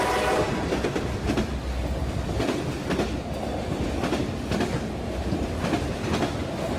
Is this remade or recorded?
recorded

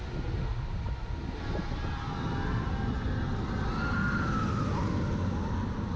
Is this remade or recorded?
recorded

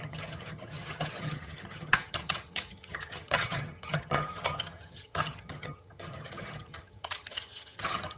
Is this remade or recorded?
remade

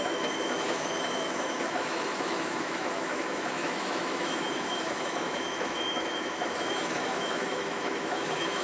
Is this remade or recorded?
remade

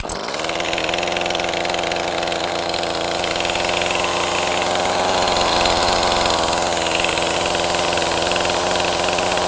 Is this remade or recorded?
recorded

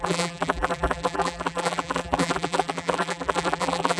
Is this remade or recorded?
remade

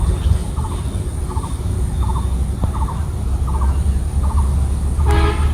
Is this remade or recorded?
recorded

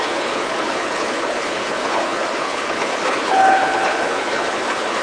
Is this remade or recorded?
remade